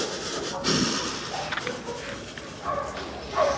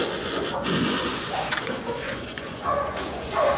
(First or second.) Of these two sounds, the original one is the first